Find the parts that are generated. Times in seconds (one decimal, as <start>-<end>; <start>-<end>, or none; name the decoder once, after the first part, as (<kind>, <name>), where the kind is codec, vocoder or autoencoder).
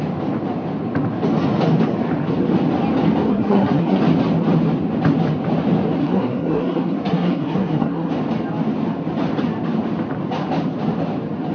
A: 3.3-4.0 (codec, SNAC); 6.0-8.1